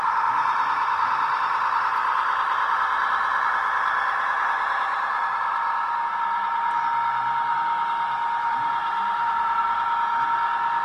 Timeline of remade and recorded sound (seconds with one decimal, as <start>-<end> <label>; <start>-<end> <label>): 0.0-2.0 recorded; 2.0-6.7 remade; 6.7-8.8 recorded; 8.8-9.6 remade; 9.6-10.8 recorded